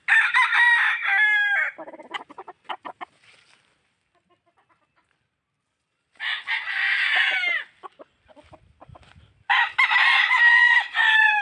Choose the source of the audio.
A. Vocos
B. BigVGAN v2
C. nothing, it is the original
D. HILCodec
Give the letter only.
C